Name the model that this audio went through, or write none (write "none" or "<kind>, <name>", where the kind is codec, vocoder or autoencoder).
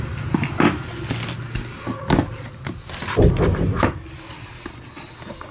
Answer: none